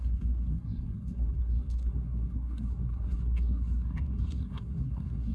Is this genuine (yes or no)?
no